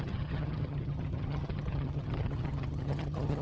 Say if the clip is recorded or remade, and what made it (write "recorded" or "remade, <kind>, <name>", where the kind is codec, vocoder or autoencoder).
remade, vocoder, HiFi-GAN